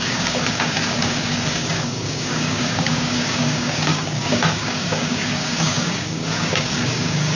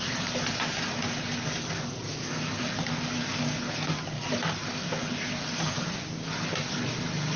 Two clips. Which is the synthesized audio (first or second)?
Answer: first